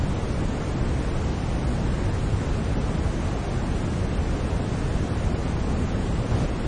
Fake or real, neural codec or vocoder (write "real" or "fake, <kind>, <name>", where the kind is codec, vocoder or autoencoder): real